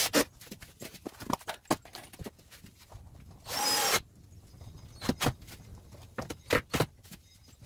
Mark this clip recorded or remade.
recorded